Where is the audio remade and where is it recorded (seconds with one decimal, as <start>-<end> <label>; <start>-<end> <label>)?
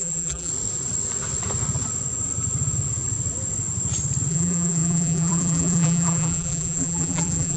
0.0-0.5 remade; 0.5-4.3 recorded; 4.3-7.6 remade